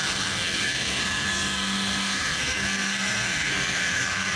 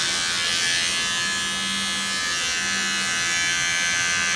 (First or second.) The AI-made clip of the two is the first